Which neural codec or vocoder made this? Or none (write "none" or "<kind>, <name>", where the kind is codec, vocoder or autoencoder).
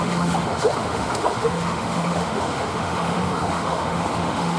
autoencoder, DAC-VAE